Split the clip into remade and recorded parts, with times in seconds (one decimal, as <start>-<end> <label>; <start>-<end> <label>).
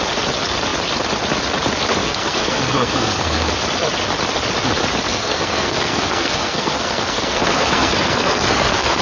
0.0-2.0 recorded; 2.0-3.5 remade; 3.5-5.1 recorded; 5.1-9.0 remade